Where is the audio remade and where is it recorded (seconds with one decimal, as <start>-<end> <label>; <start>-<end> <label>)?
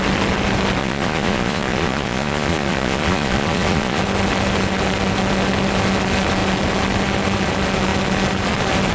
0.0-0.8 recorded; 0.8-4.0 remade; 4.0-8.9 recorded